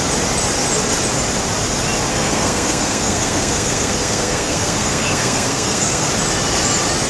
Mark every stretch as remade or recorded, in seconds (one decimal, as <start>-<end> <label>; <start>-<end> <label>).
0.0-2.1 recorded; 2.1-6.1 remade; 6.1-7.1 recorded